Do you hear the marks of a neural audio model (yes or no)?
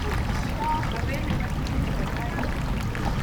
no